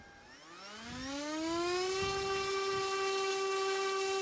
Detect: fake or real real